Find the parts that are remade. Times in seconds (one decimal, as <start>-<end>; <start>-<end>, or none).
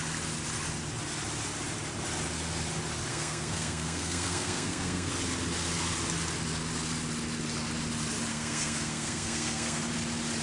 3.1-5.1; 8.3-9.8